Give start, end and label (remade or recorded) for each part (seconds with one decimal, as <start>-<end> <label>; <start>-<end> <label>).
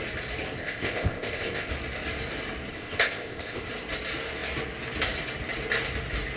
0.0-0.6 recorded; 0.6-1.7 remade; 1.7-2.7 recorded; 2.7-3.7 remade; 3.7-6.4 recorded